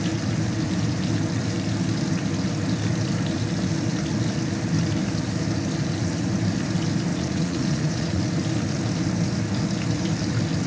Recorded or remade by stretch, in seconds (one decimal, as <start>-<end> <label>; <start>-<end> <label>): 0.0-7.1 recorded; 7.1-8.2 remade; 8.2-10.7 recorded